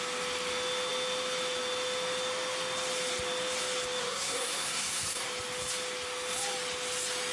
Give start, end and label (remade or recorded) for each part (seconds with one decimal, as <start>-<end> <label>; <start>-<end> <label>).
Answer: 0.0-4.0 recorded; 4.0-5.3 remade; 5.3-7.3 recorded